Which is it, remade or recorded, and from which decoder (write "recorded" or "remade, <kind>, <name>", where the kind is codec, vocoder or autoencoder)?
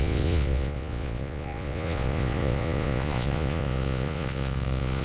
remade, vocoder, Vocos